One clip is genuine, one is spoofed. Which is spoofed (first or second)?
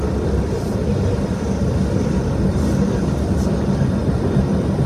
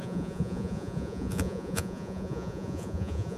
second